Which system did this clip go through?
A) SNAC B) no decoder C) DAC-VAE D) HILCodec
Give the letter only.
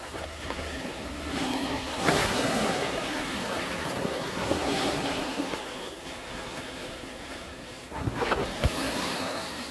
A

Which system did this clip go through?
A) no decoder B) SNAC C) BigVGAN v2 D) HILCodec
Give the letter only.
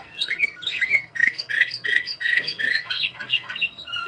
B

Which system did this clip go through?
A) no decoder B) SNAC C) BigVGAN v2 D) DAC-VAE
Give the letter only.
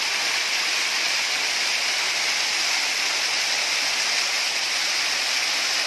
A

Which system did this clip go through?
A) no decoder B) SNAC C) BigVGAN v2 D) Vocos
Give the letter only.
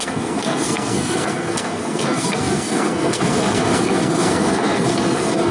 B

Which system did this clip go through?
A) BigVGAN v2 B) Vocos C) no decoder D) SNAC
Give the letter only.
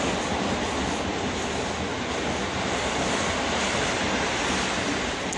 C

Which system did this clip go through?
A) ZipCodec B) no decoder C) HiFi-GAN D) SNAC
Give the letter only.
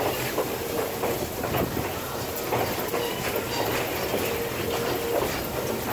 B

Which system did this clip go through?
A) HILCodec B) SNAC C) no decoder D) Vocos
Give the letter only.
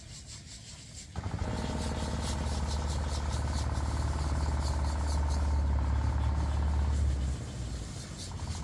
C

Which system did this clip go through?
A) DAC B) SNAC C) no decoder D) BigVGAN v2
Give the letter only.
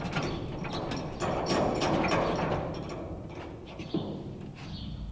C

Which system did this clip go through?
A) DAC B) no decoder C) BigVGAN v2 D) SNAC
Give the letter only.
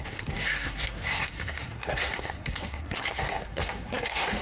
D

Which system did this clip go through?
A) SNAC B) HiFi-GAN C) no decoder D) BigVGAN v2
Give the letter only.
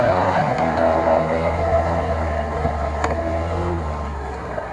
A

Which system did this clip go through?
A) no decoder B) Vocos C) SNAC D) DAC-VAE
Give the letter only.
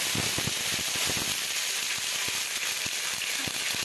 A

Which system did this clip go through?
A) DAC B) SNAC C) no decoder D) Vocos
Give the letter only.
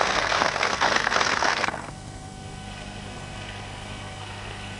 B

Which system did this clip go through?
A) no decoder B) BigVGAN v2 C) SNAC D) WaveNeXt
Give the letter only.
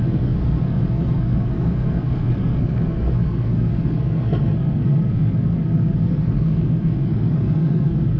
C